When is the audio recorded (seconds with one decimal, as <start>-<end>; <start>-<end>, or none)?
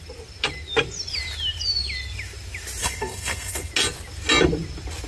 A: 0.0-2.8; 3.7-5.1